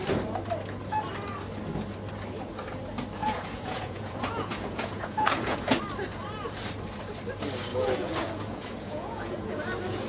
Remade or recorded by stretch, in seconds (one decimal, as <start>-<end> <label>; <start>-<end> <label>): 0.0-3.2 recorded; 3.2-5.8 remade; 5.8-7.7 recorded; 7.7-9.6 remade; 9.6-10.1 recorded